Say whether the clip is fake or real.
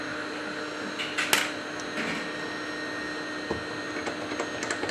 real